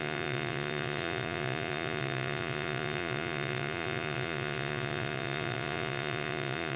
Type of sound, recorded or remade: remade